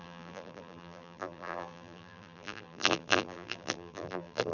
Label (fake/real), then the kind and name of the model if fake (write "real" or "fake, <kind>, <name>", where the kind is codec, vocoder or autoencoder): fake, vocoder, BigVGAN v2